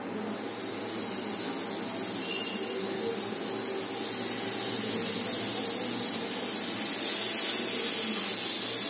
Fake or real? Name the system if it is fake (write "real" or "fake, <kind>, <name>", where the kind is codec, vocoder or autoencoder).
real